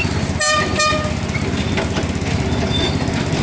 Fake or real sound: real